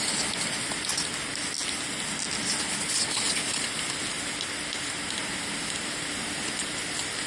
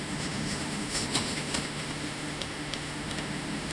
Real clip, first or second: first